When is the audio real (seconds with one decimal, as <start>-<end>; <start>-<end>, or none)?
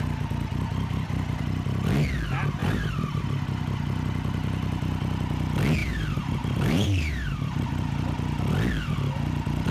0.0-2.6; 3.2-5.8; 7.7-9.7